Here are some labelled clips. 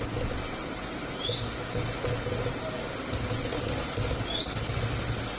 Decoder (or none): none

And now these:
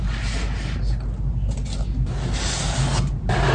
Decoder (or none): none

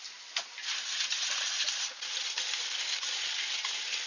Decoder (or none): none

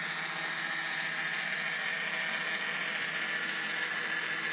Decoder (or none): none